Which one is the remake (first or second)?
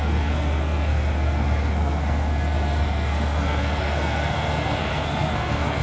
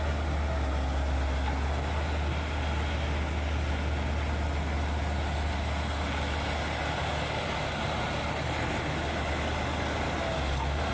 first